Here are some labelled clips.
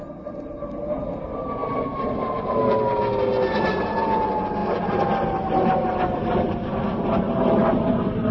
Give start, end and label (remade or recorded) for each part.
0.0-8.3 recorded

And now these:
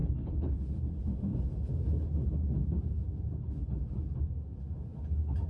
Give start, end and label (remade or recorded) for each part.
0.0-0.6 remade; 0.6-5.5 recorded

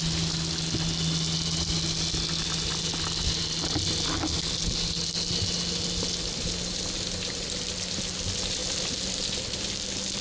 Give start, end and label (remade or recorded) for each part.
0.0-10.2 recorded

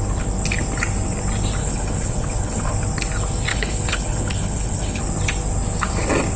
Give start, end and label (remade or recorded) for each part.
0.0-1.6 recorded; 1.6-2.7 remade; 2.7-3.5 recorded; 3.5-5.0 remade; 5.0-6.4 recorded